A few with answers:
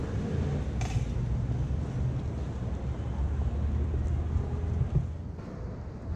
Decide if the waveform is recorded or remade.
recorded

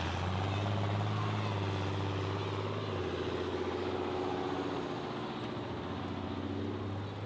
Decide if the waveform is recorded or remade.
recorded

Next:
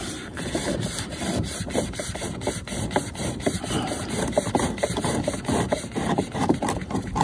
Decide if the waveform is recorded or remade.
remade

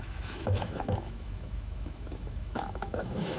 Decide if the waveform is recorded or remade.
remade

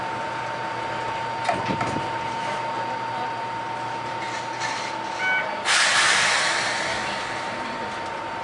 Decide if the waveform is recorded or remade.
recorded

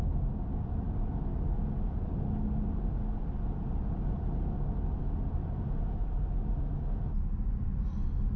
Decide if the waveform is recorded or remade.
recorded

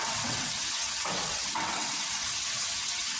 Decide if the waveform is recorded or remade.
remade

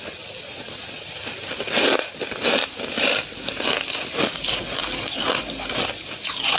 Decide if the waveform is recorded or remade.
recorded